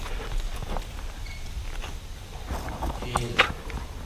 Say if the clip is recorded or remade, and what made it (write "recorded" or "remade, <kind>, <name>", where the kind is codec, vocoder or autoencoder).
recorded